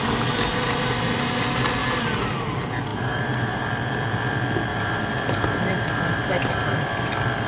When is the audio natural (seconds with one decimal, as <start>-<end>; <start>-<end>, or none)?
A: 0.0-2.9; 3.6-4.7; 7.1-7.5